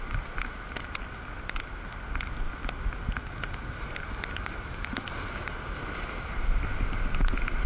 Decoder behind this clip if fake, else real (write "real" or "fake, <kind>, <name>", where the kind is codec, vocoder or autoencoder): real